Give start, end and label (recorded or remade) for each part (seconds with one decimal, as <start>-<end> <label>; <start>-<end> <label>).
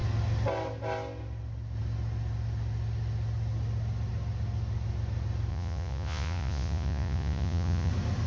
0.0-5.5 recorded; 5.5-7.9 remade; 7.9-8.3 recorded